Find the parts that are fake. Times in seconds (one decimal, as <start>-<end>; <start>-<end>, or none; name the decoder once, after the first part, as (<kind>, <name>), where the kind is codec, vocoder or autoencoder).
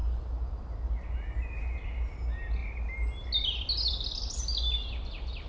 none